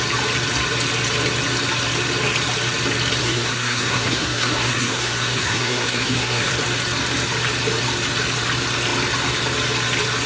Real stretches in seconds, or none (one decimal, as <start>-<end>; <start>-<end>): 0.0-3.2; 6.5-10.3